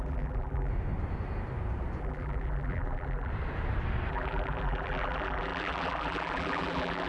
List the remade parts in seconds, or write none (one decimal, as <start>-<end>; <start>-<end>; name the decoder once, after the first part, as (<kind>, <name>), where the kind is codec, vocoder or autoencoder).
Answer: 0.0-0.7 (vocoder, BigVGAN v2); 2.0-3.3; 4.1-7.1